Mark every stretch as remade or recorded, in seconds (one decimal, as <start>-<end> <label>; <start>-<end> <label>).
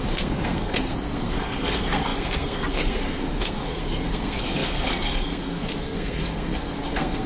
0.0-7.3 remade